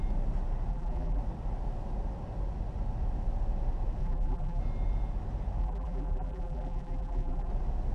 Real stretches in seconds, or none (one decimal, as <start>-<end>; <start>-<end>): 0.0-0.7; 1.2-4.0; 4.6-5.6; 7.5-7.9